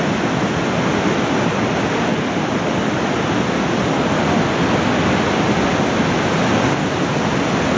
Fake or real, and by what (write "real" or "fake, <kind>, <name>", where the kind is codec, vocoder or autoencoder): real